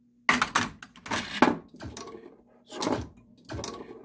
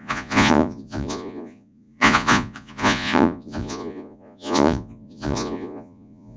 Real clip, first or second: first